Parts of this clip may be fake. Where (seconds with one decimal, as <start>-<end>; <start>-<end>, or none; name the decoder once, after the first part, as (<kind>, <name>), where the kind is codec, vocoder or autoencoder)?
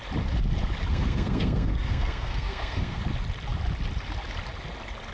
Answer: 0.9-3.0 (codec, SNAC)